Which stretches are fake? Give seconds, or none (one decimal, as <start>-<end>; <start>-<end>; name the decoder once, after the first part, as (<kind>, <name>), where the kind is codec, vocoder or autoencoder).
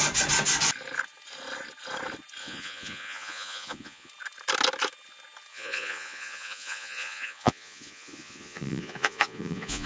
2.4-4.1 (vocoder, Vocos); 5.5-9.9